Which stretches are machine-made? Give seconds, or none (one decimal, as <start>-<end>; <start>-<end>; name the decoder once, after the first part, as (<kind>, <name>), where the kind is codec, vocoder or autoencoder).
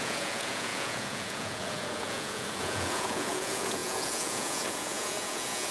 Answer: 0.0-5.7 (vocoder, Vocos)